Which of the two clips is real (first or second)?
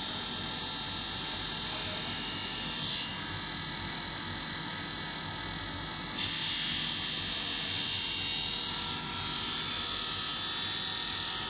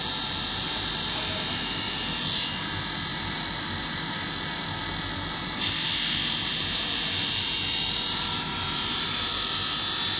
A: first